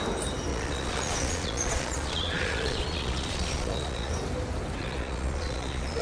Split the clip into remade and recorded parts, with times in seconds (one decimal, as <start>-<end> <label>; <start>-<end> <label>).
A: 0.0-0.5 recorded; 0.5-4.1 remade; 4.1-4.8 recorded; 4.8-6.0 remade